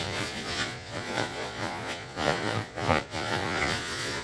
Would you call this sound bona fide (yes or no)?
no